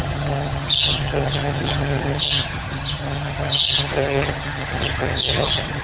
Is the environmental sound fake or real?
fake